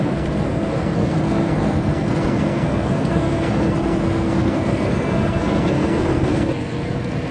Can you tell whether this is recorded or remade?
remade